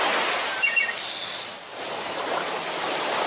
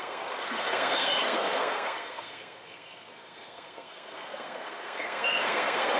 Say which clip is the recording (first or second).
first